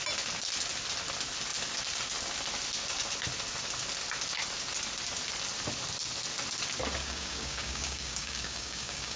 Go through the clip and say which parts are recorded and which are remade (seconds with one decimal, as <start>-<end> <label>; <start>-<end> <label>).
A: 0.0-7.0 recorded; 7.0-9.2 remade